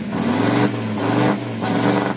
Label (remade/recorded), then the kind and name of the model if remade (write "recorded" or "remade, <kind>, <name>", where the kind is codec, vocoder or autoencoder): recorded